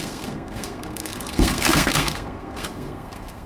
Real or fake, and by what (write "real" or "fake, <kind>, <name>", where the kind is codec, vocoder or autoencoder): fake, codec, SNAC